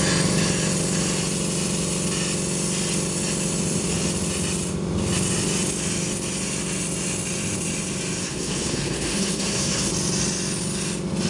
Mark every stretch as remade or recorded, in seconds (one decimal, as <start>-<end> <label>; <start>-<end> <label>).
0.0-8.2 recorded; 8.2-9.9 remade; 9.9-11.3 recorded